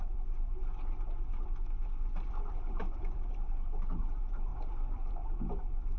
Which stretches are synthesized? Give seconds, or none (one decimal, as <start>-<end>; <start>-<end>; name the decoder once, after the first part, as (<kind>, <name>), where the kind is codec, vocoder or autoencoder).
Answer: 0.0-0.6 (vocoder, BigVGAN v2); 1.8-6.0